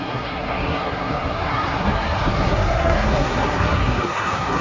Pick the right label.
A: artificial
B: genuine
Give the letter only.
A